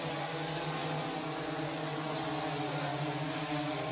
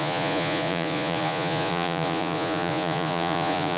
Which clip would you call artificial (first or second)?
second